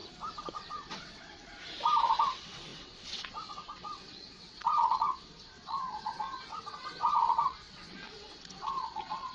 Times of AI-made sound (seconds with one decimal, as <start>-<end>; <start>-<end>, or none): 0.5-1.4; 2.1-9.3